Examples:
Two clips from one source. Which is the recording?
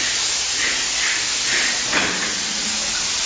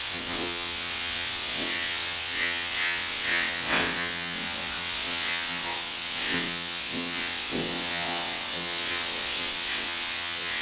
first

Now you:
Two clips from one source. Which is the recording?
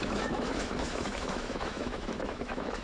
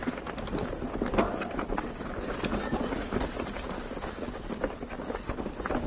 second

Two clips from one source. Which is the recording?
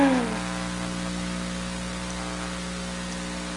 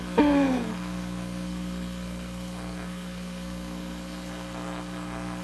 first